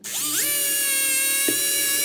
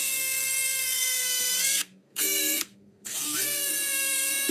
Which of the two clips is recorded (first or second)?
first